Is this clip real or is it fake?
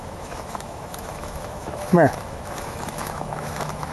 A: fake